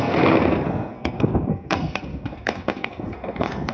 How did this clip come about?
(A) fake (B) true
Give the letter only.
A